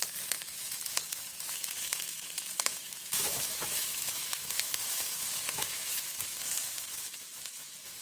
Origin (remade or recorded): remade